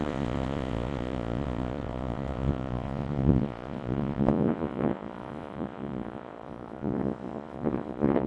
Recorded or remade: remade